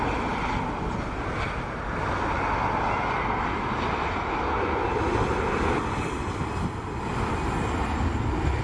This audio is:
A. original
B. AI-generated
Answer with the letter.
A